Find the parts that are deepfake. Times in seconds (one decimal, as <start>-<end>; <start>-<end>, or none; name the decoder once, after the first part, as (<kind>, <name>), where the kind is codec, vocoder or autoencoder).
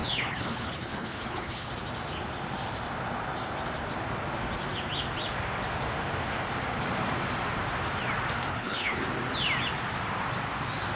0.0-1.7 (codec, HILCodec); 8.5-9.0